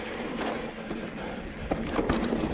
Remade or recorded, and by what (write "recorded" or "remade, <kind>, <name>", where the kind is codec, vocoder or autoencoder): recorded